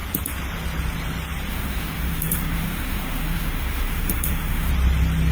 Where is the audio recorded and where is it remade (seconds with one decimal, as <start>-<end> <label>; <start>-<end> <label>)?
0.0-1.5 recorded; 1.5-4.7 remade; 4.7-5.3 recorded